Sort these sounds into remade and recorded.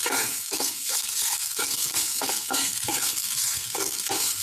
remade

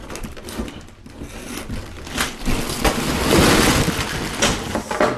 recorded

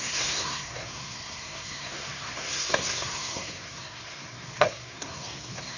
remade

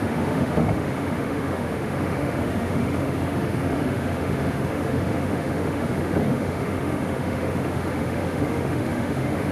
remade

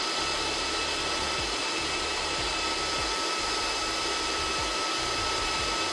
recorded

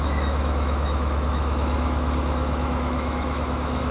remade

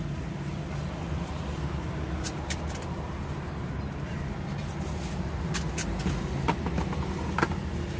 recorded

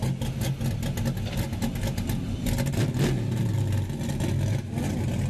recorded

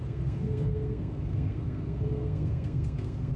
remade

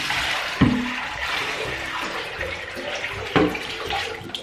remade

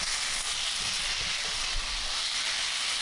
recorded